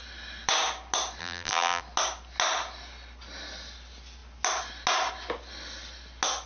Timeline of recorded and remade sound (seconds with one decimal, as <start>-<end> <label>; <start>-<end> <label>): 0.0-1.2 recorded; 1.2-1.8 remade; 1.8-6.5 recorded